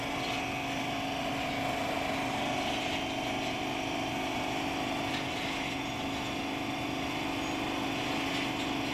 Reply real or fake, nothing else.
real